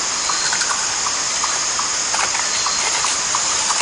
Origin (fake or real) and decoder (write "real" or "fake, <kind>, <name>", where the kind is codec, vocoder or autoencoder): real